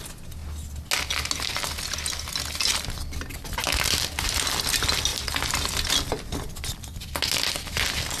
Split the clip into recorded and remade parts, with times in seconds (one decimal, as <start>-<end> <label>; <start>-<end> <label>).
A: 0.0-8.2 recorded